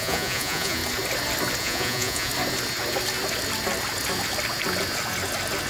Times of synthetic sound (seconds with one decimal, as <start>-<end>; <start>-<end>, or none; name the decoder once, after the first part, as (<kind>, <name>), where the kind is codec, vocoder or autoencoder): 0.0-0.8 (vocoder, Vocos); 1.6-2.3